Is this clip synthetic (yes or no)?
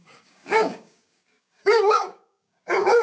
yes